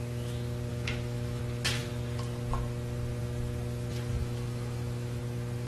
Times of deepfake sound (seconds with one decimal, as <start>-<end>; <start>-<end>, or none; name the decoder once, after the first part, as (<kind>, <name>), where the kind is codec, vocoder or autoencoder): 0.7-1.4 (autoencoder, DAC-VAE); 4.2-5.2